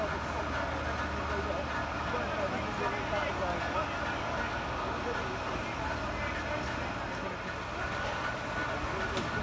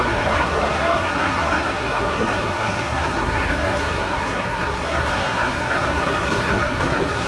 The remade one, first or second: second